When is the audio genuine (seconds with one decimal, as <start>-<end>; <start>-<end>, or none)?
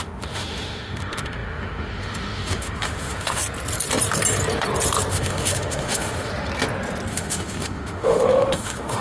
3.4-5.1; 6.3-7.1